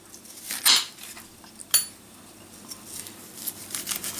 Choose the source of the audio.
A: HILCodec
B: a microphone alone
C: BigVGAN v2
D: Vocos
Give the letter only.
B